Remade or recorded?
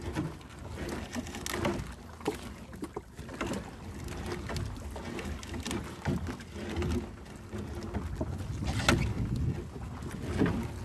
recorded